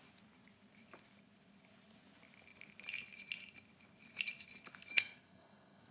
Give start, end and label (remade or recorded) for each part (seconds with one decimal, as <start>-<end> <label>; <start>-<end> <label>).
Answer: 0.0-4.9 recorded; 4.9-5.9 remade